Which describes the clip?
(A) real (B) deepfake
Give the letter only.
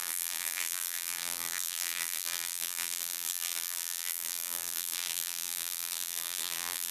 B